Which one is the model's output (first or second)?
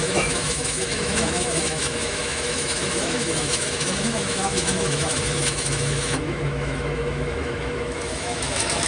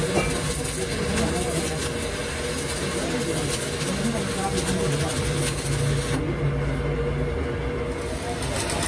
first